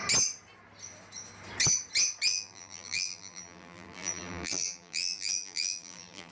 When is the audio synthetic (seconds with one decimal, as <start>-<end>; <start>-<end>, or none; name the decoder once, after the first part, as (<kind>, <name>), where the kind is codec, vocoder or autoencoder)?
2.3-6.3 (vocoder, BigVGAN v2)